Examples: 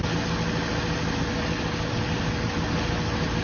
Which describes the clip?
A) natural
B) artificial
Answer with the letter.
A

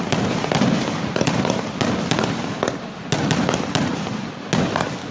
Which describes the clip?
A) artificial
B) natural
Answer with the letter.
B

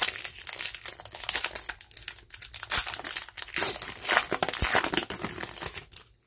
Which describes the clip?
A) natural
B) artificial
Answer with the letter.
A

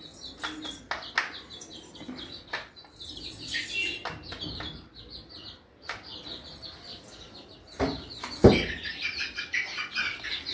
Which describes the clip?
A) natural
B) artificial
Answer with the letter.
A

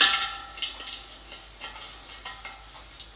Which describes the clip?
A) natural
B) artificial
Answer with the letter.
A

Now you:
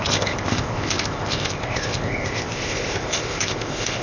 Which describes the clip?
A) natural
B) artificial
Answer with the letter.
B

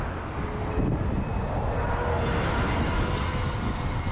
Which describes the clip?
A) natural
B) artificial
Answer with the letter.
A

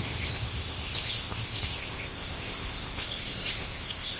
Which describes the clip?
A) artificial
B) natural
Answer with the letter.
A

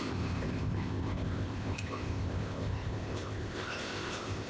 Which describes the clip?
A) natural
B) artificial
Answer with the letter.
B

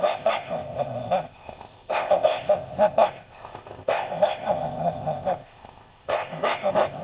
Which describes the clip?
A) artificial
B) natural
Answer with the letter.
A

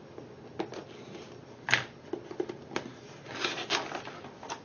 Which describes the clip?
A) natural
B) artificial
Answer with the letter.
A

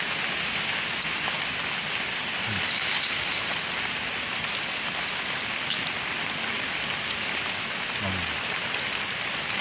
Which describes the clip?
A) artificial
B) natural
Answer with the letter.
B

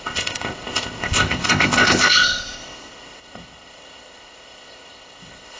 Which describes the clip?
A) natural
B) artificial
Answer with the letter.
B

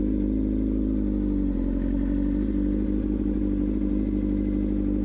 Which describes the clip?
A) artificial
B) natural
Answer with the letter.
B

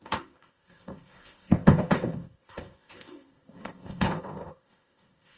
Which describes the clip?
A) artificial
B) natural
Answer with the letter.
A